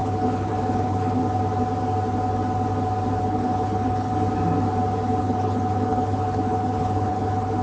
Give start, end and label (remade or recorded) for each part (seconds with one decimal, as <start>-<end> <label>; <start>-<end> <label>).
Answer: 0.0-1.2 remade; 1.2-3.2 recorded; 3.2-4.1 remade; 4.1-5.2 recorded; 5.2-7.6 remade